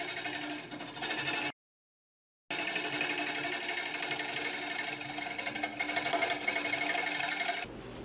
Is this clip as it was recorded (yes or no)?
yes